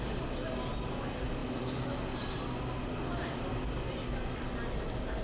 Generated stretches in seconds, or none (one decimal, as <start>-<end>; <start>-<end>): none